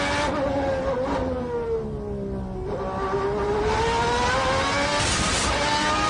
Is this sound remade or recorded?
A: recorded